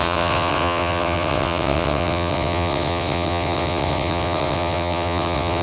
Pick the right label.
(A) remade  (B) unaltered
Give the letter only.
A